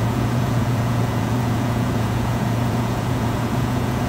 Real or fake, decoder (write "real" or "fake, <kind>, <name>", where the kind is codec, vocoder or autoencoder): fake, vocoder, Vocos